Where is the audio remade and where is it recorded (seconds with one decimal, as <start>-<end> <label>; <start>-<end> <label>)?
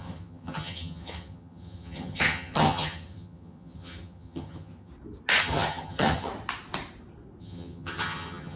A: 0.0-4.9 remade; 4.9-5.4 recorded; 5.4-6.3 remade; 6.3-7.4 recorded; 7.4-8.6 remade